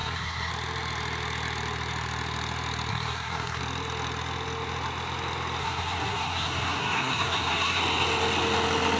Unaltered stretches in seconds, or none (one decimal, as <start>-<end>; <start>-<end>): 0.5-2.9; 3.6-5.6; 7.8-9.0